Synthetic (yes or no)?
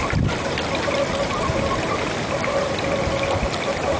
no